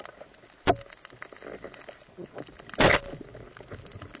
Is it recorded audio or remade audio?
recorded